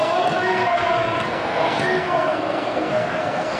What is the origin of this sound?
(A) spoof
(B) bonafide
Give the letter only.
A